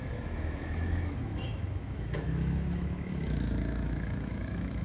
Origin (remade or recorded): remade